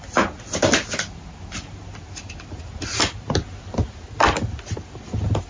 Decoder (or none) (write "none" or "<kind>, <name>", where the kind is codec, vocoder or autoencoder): none